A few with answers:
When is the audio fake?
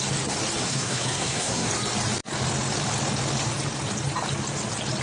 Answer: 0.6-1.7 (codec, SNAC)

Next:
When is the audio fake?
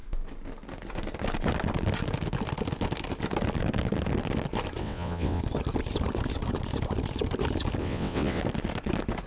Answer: 4.8-5.4 (vocoder, WaveNeXt); 7.8-8.4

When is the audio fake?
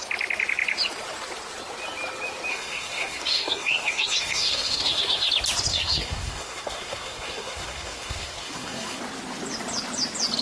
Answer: 2.5-5.3 (codec, SNAC); 5.7-9.0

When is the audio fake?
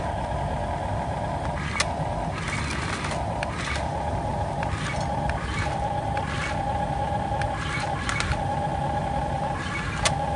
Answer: none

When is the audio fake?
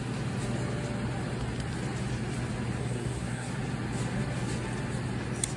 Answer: 2.8-3.5 (codec, SNAC)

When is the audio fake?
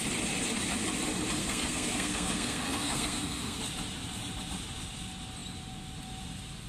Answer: 1.4-3.6 (codec, SNAC)